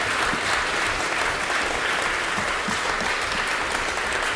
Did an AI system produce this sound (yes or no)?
no